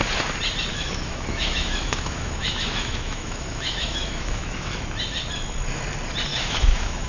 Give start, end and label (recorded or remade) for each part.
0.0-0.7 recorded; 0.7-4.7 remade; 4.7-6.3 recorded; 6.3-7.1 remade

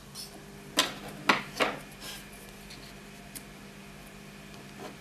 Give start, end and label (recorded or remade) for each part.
0.0-5.0 recorded

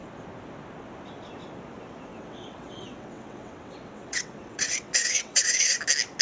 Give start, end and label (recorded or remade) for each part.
0.0-2.1 recorded; 2.1-5.8 remade; 5.8-6.2 recorded

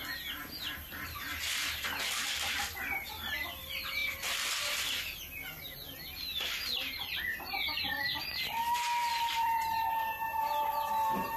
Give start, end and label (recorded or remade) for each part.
0.0-7.3 recorded; 7.3-8.0 remade; 8.0-9.1 recorded; 9.1-10.4 remade; 10.4-11.4 recorded

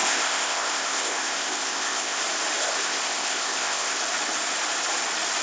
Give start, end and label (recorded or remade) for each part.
0.0-2.2 remade; 2.2-2.6 recorded; 2.6-4.0 remade; 4.0-5.4 recorded

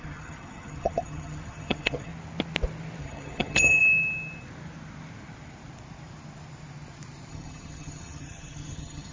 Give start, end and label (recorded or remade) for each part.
0.0-2.1 remade; 2.1-3.0 recorded; 3.0-3.8 remade; 3.8-7.3 recorded; 7.3-9.1 remade

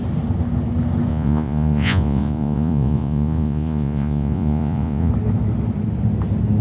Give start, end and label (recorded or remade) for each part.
0.0-1.1 recorded; 1.1-5.1 remade; 5.1-6.6 recorded

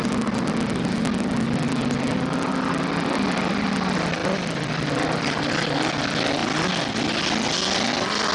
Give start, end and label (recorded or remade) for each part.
0.0-4.2 recorded; 4.2-5.9 remade; 5.9-8.3 recorded